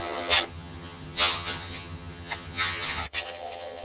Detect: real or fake fake